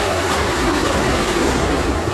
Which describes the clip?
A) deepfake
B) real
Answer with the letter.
A